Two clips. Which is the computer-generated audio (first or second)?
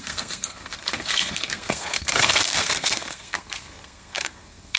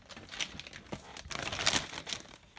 first